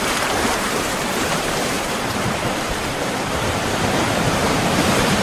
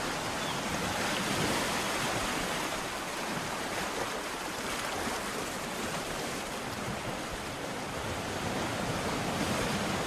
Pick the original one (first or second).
second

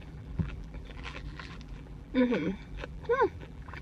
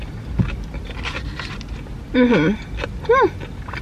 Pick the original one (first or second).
second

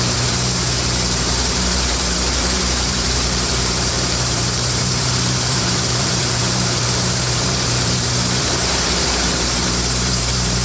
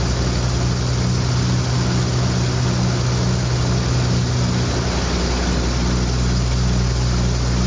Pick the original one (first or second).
second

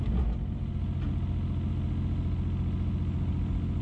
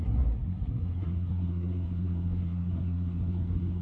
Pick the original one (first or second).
first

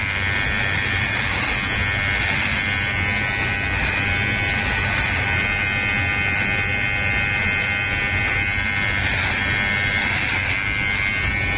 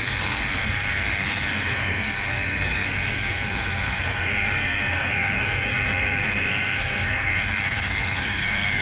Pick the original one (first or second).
first